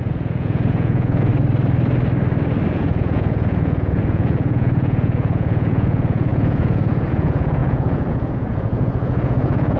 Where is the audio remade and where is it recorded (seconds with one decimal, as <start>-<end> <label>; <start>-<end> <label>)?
0.0-1.3 remade; 1.3-2.7 recorded; 2.7-9.8 remade